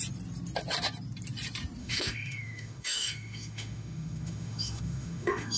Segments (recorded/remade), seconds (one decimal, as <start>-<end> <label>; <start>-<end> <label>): 0.0-1.8 recorded; 1.8-5.6 remade